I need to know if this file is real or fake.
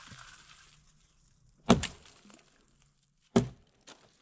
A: real